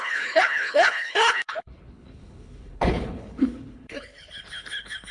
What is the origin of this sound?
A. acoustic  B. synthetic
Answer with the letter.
B